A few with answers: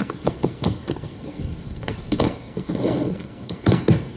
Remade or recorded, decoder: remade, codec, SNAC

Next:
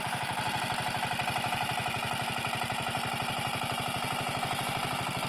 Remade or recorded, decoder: recorded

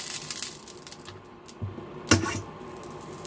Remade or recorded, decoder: recorded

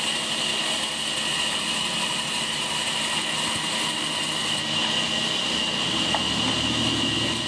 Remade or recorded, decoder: recorded